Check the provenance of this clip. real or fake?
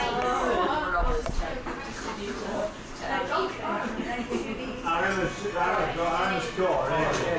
real